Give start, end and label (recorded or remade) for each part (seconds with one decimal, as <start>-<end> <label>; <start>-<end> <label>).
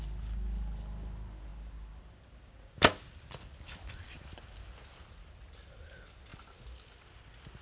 0.0-7.6 recorded